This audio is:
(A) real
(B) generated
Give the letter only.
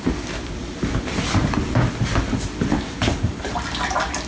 A